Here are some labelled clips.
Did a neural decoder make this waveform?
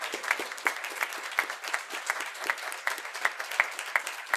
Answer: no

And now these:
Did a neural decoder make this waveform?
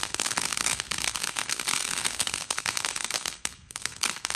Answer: yes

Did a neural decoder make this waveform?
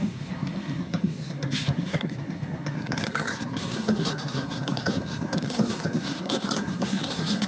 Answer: yes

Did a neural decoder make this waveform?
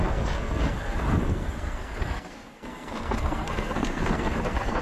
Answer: yes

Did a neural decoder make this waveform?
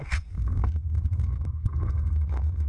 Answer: yes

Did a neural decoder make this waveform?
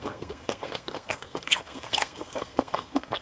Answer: yes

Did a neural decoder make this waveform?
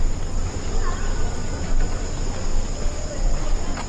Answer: no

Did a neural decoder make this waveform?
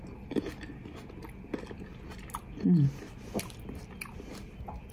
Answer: no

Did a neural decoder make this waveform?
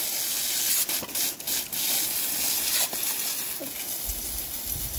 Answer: no